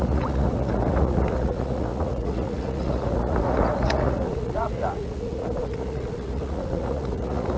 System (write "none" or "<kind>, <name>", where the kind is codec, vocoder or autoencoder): vocoder, Vocos